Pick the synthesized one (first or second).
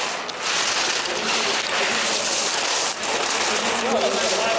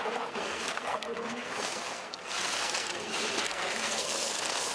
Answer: second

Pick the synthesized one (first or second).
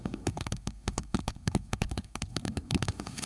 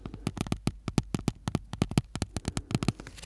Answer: first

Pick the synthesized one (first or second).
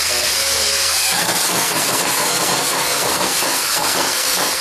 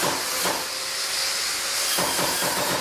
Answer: first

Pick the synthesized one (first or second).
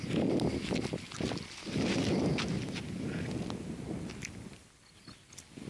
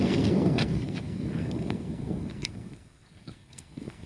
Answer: second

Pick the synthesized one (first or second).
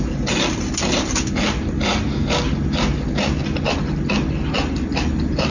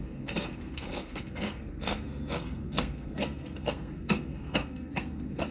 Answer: second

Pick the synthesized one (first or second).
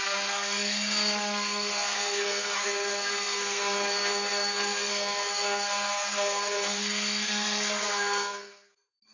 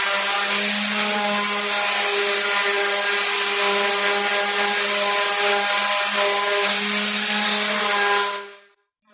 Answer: first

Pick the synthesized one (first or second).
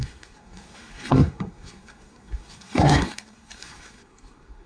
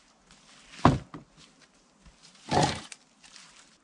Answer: first